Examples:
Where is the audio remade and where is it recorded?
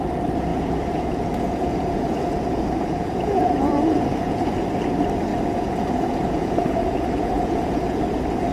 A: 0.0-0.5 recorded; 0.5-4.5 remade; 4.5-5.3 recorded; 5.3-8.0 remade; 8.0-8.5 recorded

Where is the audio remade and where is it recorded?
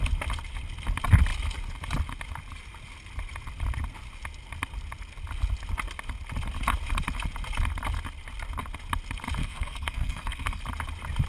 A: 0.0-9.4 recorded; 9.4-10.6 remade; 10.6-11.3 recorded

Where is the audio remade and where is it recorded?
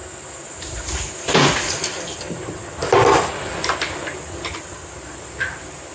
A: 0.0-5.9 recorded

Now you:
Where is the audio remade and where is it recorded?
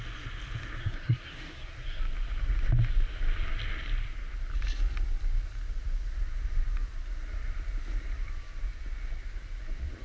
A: 0.0-0.8 recorded; 0.8-2.0 remade; 2.0-10.0 recorded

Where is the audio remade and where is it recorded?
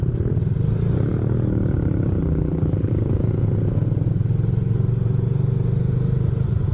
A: 0.0-2.2 recorded; 2.2-2.9 remade; 2.9-6.7 recorded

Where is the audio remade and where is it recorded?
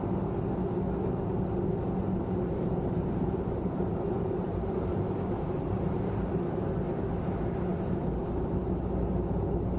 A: 0.0-2.2 recorded; 2.2-6.4 remade; 6.4-9.8 recorded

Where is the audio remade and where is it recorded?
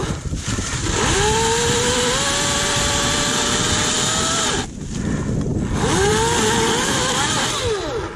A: 0.0-0.7 remade; 0.7-8.2 recorded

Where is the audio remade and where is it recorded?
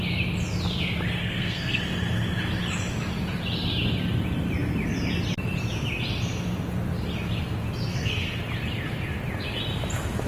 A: 0.0-1.2 recorded; 1.2-1.8 remade; 1.8-7.9 recorded; 7.9-8.4 remade; 8.4-10.3 recorded